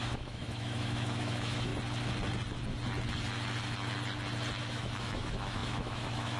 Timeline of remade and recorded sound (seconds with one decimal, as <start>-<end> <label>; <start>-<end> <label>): 0.0-1.7 remade; 1.7-4.6 recorded; 4.6-6.4 remade